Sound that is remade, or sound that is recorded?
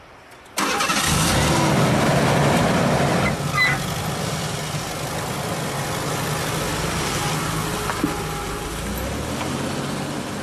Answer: recorded